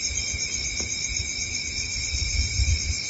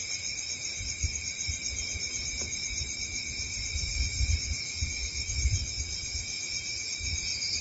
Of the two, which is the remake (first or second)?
second